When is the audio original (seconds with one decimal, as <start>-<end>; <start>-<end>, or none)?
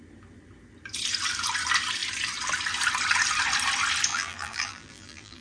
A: 0.0-4.1